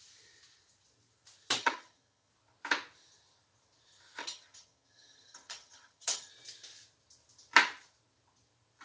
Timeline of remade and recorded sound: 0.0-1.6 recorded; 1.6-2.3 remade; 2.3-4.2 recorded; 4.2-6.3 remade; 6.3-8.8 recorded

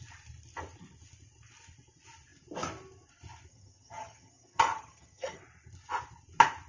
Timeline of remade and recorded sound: 0.0-3.5 recorded; 3.5-5.4 remade; 5.4-6.7 recorded

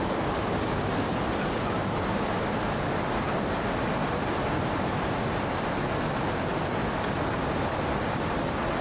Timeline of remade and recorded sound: 0.0-8.8 recorded

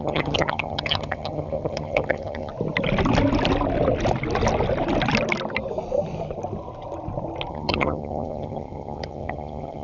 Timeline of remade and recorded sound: 0.0-2.5 remade; 2.5-7.5 recorded; 7.5-9.8 remade